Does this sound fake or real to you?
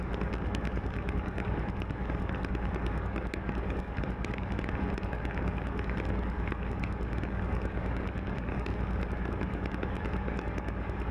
fake